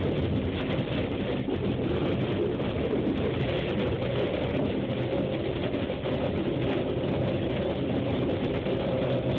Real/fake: real